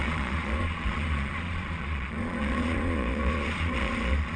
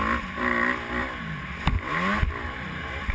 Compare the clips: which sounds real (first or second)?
second